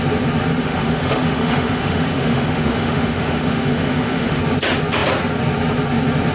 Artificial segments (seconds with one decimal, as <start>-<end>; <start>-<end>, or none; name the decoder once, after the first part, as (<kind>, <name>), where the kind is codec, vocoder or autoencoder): 0.6-4.4 (autoencoder, DAC-VAE)